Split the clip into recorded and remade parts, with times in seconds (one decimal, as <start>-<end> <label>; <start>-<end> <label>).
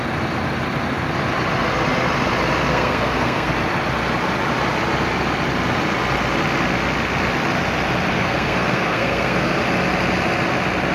0.0-2.7 recorded; 2.7-3.5 remade; 3.5-8.1 recorded; 8.1-9.6 remade; 9.6-10.9 recorded